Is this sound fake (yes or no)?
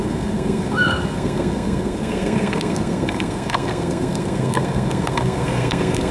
yes